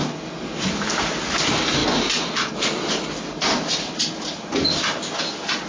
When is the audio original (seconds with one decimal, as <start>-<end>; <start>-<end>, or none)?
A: 0.0-5.7